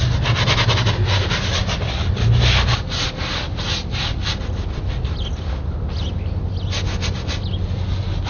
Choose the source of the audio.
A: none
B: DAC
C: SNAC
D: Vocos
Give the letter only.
A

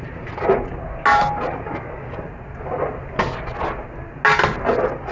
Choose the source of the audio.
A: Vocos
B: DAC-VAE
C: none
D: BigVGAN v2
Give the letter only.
C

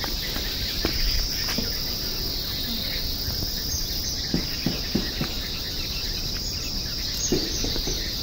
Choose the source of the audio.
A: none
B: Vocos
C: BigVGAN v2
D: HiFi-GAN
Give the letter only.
A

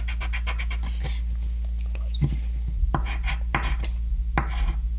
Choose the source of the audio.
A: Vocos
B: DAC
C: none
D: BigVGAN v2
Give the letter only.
C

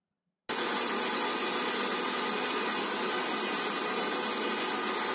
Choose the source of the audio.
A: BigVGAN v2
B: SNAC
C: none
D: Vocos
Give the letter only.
C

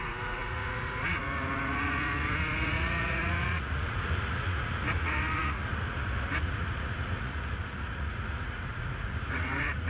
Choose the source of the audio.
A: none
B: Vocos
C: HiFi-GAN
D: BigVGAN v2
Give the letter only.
B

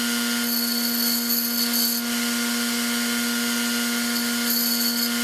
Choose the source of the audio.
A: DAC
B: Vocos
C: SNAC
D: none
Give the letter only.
D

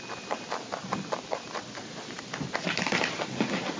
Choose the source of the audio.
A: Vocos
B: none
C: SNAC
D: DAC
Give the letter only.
B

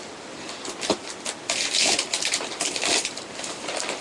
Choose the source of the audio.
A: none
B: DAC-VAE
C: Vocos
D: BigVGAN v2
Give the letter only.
A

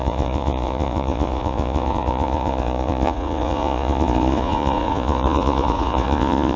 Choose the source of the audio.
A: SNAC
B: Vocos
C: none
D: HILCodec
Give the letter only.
B